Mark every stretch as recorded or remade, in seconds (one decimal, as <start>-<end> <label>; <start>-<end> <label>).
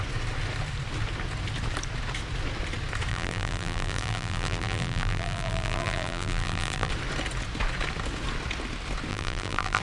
0.0-3.1 recorded; 3.1-6.9 remade; 6.9-9.1 recorded; 9.1-9.8 remade